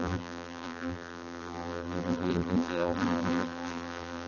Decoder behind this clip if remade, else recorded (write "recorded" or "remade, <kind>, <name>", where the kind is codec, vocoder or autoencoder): remade, vocoder, BigVGAN v2